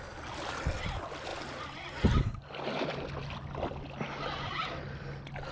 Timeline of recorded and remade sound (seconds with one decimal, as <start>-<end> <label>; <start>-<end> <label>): 0.0-5.5 recorded